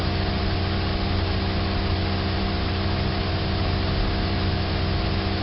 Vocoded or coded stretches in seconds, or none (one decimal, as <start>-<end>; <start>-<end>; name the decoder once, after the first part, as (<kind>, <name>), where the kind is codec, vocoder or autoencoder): none